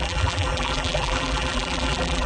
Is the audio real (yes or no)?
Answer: no